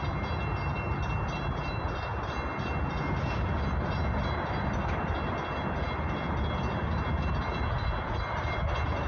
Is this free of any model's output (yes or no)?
yes